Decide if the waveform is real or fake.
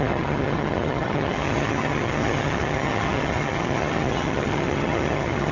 fake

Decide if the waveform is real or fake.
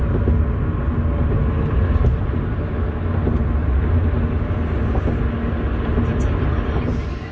real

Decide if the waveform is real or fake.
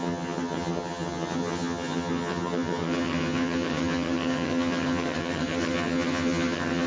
fake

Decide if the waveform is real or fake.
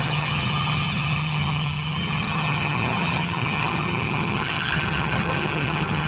fake